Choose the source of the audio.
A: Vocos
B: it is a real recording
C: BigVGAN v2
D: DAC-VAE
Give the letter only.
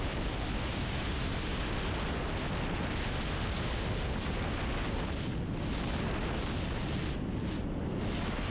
B